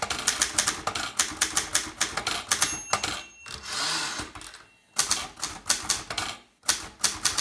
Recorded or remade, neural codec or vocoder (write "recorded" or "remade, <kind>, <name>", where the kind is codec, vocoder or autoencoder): recorded